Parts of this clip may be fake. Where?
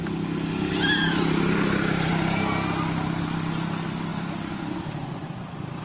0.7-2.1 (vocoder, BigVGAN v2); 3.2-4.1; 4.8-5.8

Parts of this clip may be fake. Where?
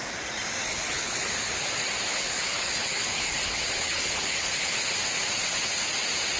0.7-1.7 (codec, HILCodec); 2.1-4.9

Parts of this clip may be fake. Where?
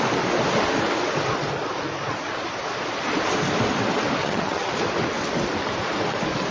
4.2-4.7 (vocoder, HiFi-GAN)